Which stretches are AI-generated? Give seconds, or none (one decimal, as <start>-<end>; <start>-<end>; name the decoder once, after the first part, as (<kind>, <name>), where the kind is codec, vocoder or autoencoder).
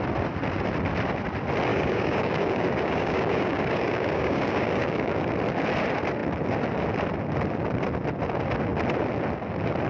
1.7-5.3 (codec, DAC)